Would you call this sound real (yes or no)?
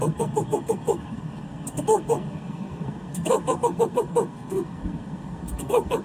no